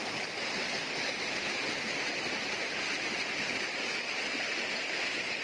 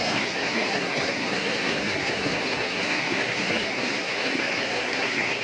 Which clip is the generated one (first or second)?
second